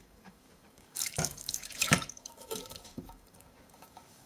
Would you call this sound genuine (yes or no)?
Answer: no